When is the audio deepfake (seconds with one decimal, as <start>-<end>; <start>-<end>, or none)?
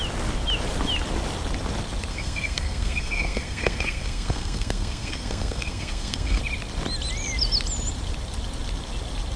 2.1-6.4